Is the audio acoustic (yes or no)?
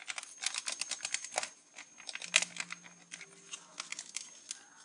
yes